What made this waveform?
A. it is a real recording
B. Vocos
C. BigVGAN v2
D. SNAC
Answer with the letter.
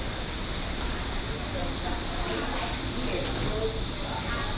A